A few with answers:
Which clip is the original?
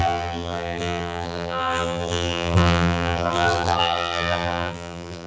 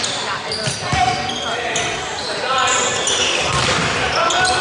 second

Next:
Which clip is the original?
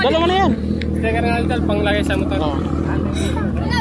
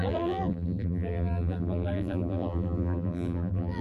first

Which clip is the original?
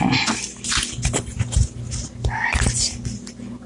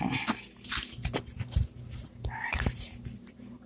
first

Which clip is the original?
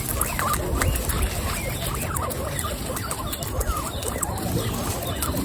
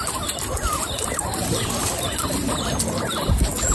first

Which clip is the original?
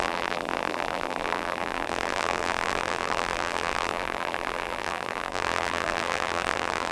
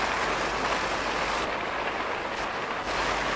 second